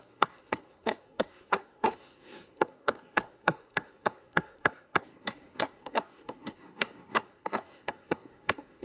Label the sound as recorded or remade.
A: remade